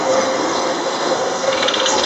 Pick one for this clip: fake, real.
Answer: fake